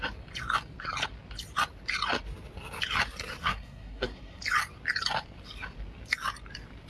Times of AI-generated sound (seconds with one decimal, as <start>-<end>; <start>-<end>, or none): 3.4-4.4